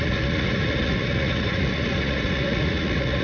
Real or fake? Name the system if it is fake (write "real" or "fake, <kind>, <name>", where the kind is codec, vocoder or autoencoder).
fake, vocoder, Vocos